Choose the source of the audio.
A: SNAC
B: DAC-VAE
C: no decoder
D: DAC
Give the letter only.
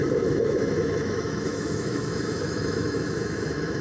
B